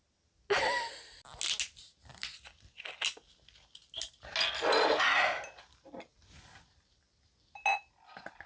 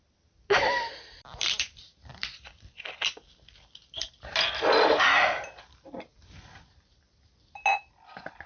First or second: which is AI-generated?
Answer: second